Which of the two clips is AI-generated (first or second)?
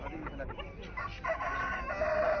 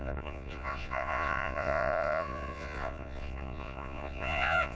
second